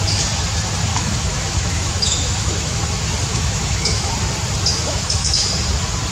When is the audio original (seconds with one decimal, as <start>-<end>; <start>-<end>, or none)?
0.0-0.9; 2.8-3.3; 4.1-4.7; 5.5-6.1